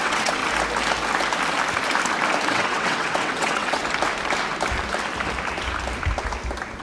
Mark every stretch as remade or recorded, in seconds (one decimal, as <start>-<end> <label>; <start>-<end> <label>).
0.0-0.4 remade; 0.4-2.5 recorded; 2.5-3.8 remade; 3.8-6.8 recorded